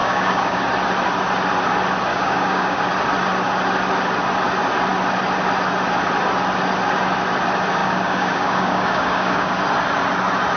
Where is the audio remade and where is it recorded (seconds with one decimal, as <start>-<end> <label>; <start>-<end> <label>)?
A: 0.0-0.6 remade; 0.6-2.1 recorded; 2.1-2.8 remade; 2.8-7.8 recorded; 7.8-9.6 remade; 9.6-10.6 recorded